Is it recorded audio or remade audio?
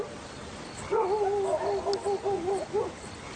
recorded